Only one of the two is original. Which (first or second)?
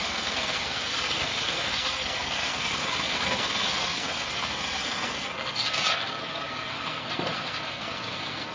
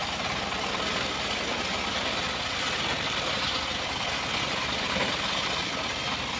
second